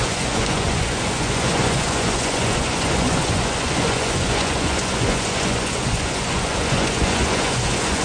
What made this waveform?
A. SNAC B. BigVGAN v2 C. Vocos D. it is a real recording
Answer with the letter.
C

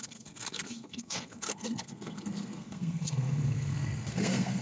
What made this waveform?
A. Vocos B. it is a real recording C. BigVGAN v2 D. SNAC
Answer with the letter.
D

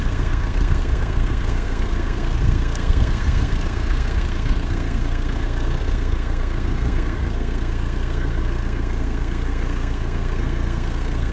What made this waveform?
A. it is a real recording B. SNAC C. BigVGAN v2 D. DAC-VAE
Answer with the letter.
B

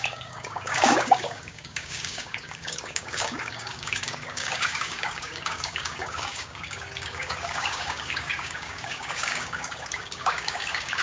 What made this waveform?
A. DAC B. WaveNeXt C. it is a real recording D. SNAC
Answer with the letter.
A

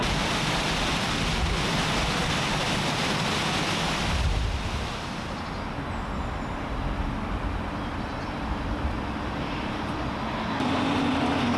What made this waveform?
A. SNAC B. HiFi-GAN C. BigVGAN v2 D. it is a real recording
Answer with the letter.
D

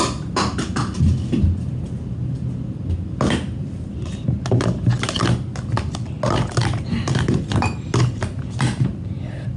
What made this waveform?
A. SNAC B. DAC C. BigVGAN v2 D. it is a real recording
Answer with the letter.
D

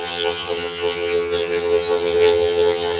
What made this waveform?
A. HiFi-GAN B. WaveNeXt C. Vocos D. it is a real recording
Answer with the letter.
A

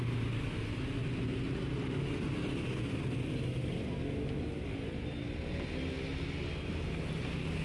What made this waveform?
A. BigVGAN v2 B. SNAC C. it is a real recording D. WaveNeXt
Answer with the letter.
C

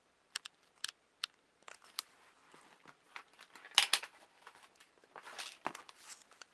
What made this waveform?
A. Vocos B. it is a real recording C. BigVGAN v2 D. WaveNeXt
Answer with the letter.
B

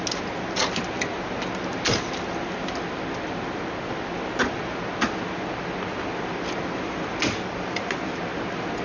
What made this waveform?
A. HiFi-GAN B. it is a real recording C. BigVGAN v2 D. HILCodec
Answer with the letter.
B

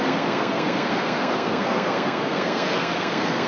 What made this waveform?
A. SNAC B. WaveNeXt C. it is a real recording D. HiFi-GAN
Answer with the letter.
A